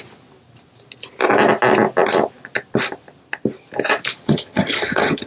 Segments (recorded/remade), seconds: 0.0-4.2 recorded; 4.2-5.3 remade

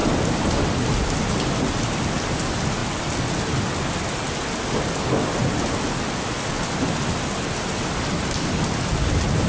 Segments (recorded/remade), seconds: 0.0-9.5 recorded

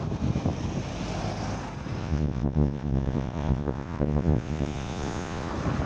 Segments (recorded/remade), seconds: 0.0-2.0 recorded; 2.0-5.5 remade; 5.5-5.9 recorded

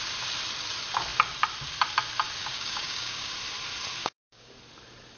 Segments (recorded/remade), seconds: 0.0-2.4 recorded; 2.4-3.3 remade; 3.3-4.0 recorded; 4.0-4.5 remade; 4.5-5.2 recorded

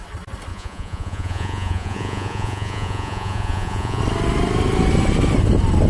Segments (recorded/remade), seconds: 0.0-0.5 recorded; 0.5-4.0 remade; 4.0-5.9 recorded

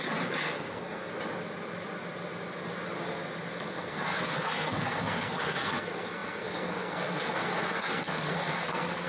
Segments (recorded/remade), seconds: 0.0-1.1 remade; 1.1-3.5 recorded; 3.5-9.1 remade

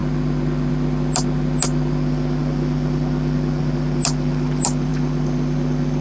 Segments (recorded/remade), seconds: 0.0-6.0 recorded